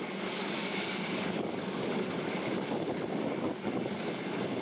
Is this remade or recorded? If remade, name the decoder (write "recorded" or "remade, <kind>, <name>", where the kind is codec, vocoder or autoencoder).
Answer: remade, codec, DAC